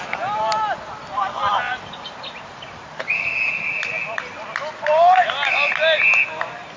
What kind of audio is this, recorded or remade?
recorded